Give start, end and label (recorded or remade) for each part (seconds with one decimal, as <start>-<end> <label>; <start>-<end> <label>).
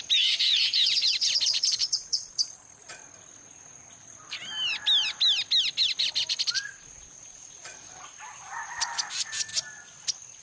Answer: 0.0-4.4 remade; 4.4-6.0 recorded; 6.0-9.5 remade; 9.5-10.4 recorded